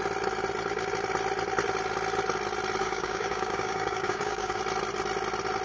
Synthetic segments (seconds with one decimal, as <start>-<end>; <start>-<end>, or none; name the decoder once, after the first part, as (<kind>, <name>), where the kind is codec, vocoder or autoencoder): 2.8-4.6 (codec, DAC)